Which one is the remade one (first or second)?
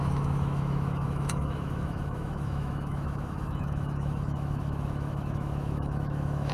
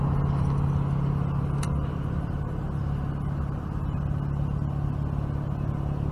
first